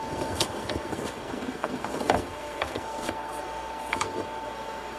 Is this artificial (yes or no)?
yes